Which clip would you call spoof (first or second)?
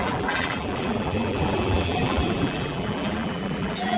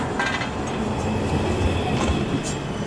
first